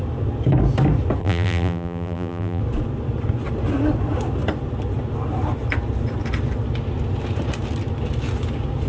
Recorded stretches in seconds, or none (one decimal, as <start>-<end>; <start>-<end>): 0.0-1.2; 2.6-8.9